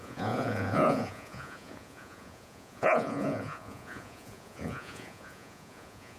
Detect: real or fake fake